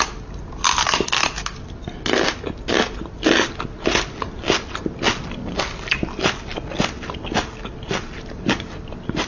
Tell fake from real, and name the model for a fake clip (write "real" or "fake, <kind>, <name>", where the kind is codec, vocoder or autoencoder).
real